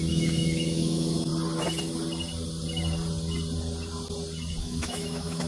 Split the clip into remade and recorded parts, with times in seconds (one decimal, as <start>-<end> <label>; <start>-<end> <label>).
0.0-1.3 remade; 1.3-4.6 recorded; 4.6-5.5 remade